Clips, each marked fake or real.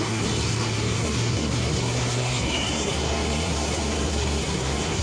fake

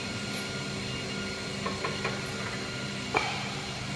real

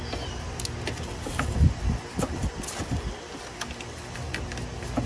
real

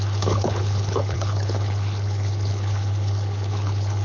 fake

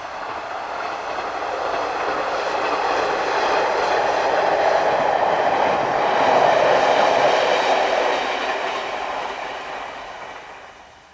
real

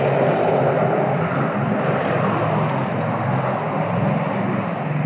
real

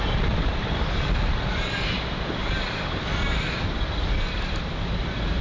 real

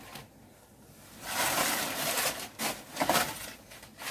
real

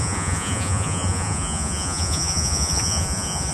fake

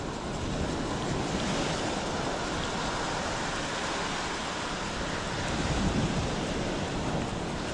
real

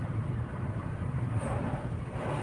real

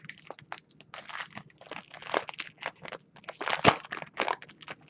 real